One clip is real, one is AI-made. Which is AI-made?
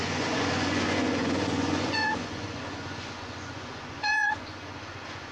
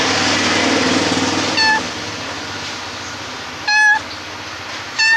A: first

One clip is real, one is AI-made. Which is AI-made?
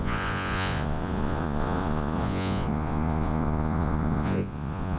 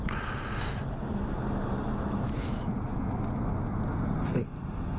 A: first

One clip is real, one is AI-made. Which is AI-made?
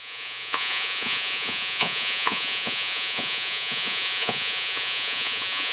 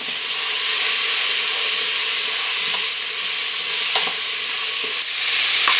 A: first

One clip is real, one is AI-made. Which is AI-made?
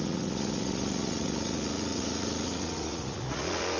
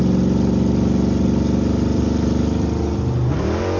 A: first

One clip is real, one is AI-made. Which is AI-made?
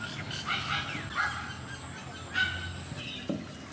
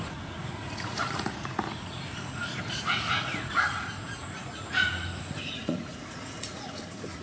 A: second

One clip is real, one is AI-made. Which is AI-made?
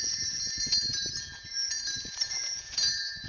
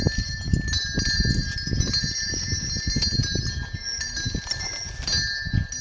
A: first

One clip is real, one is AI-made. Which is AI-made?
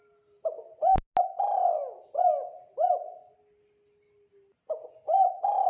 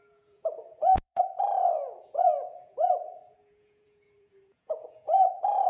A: second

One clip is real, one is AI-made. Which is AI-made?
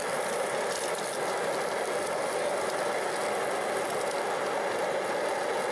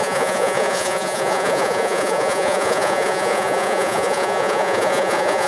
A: second